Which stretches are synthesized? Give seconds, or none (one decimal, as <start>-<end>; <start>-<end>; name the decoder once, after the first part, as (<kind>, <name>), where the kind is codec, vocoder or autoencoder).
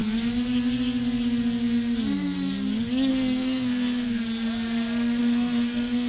3.1-4.2 (codec, SNAC); 5.2-6.1